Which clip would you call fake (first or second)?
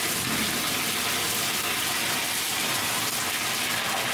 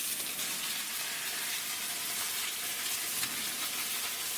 second